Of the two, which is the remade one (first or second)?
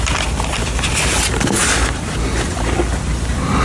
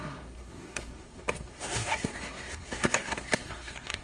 second